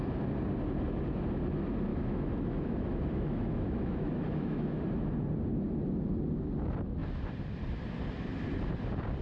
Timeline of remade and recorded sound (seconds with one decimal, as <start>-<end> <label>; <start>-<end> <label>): 0.0-1.9 recorded; 1.9-4.8 remade; 4.8-9.2 recorded